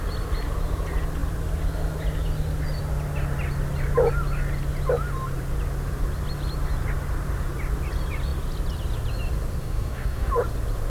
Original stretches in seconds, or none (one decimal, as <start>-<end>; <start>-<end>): 0.0-9.6; 10.3-10.9